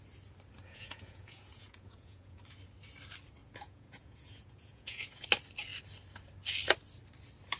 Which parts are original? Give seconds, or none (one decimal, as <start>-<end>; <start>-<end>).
0.0-0.6; 2.4-3.4; 5.2-7.6